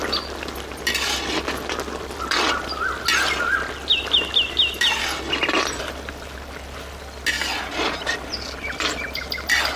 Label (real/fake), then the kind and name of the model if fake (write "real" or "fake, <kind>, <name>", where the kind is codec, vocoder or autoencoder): real